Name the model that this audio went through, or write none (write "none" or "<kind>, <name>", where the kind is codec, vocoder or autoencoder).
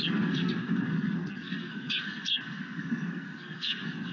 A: codec, SNAC